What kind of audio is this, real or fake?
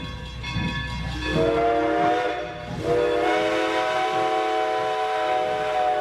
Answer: real